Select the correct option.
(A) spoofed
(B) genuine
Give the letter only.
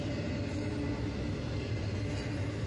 B